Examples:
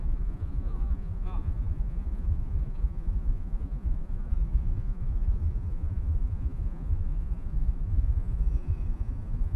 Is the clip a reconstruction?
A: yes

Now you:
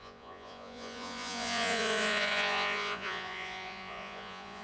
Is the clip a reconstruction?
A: yes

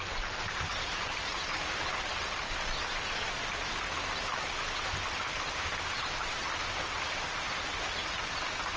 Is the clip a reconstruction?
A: no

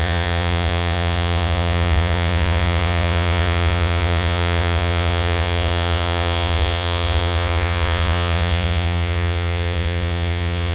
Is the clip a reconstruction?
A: yes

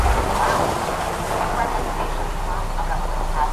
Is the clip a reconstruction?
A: no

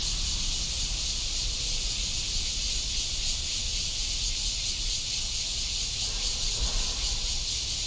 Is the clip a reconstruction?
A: no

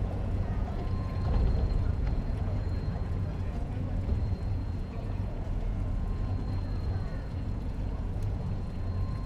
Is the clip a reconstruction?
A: yes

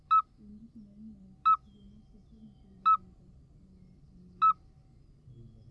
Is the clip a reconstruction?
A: no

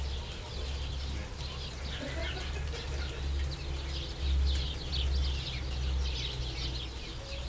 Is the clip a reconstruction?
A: no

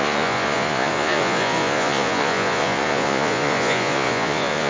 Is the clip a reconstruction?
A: yes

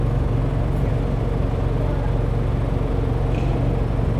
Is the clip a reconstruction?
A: no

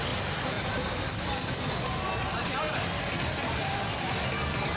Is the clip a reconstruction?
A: no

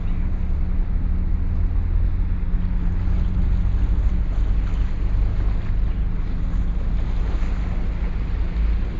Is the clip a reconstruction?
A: no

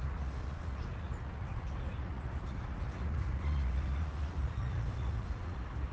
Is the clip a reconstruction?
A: yes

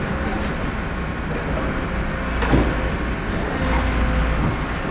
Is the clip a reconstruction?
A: no